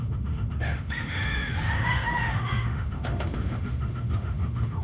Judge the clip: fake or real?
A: fake